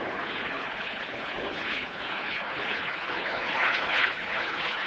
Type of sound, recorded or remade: remade